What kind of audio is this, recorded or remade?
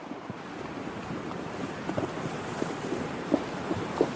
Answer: recorded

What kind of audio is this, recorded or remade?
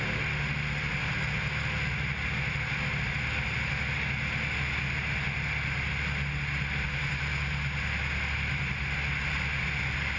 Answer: recorded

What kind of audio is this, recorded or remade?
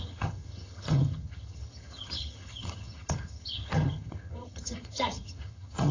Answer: remade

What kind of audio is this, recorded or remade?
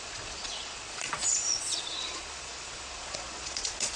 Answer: remade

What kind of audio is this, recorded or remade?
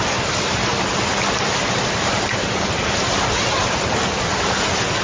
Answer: recorded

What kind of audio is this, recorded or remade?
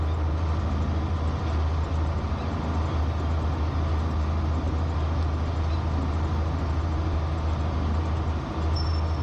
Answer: recorded